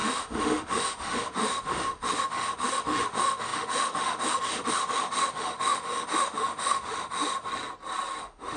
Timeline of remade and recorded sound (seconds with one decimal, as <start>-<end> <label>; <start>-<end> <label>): 0.0-7.5 remade; 7.5-8.2 recorded; 8.2-8.6 remade